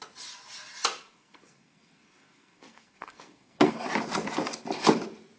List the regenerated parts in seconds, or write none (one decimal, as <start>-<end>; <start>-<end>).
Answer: 1.0-3.8